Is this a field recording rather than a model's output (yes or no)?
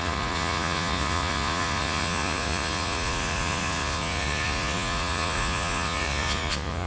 no